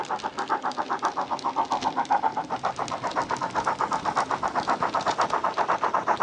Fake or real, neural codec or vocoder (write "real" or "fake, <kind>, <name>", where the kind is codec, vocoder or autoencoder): real